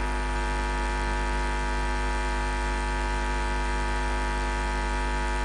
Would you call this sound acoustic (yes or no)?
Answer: yes